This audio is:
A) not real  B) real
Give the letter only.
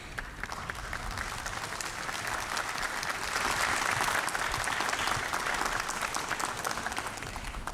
B